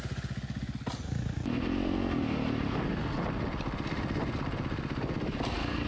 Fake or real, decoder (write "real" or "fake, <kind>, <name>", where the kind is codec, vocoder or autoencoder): real